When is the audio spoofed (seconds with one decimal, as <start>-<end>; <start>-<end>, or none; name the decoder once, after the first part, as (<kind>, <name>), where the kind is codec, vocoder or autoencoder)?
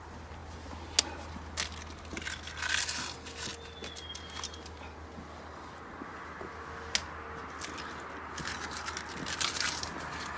none